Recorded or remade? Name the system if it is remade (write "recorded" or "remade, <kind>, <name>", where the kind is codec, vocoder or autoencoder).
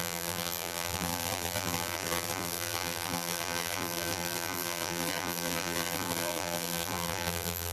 remade, vocoder, BigVGAN v2